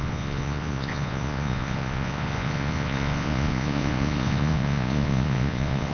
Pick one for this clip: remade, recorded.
remade